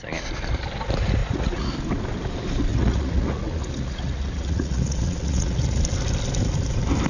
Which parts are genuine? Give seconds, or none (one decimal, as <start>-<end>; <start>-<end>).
0.0-1.2; 1.7-2.7; 5.8-7.1